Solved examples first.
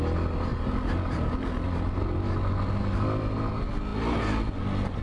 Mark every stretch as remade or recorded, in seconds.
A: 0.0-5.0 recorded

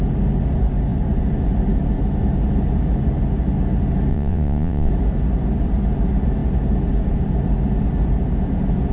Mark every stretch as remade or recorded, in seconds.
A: 0.0-4.1 recorded; 4.1-4.9 remade; 4.9-8.9 recorded

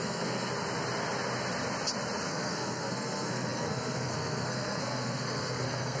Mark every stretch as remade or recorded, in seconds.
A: 0.0-0.5 remade; 0.5-2.3 recorded; 2.3-6.0 remade

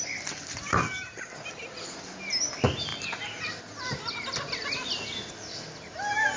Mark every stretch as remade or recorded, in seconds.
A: 0.0-6.4 recorded

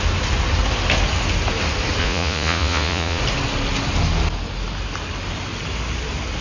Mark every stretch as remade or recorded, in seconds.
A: 0.0-2.0 recorded; 2.0-3.2 remade; 3.2-6.4 recorded